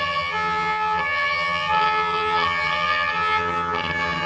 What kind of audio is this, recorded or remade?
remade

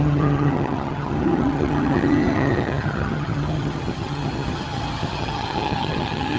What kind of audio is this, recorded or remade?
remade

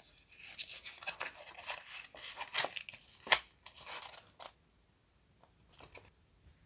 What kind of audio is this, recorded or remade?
recorded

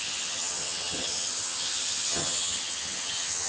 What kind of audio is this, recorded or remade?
remade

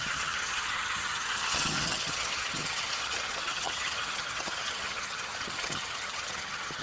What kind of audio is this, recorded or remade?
remade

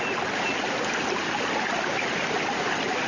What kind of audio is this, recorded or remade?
recorded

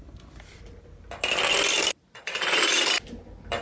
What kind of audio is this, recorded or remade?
recorded